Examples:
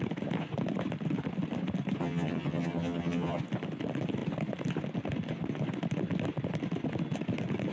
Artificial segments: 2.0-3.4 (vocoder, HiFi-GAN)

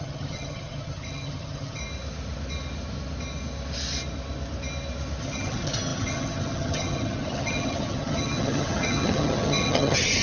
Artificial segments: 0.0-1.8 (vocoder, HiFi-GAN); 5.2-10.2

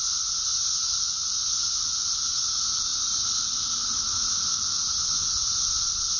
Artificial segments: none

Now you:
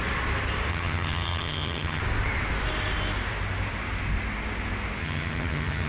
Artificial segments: 0.7-2.0 (vocoder, HiFi-GAN); 5.0-5.9